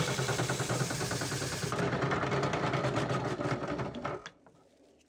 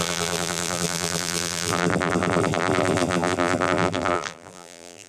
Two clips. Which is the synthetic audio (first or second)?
second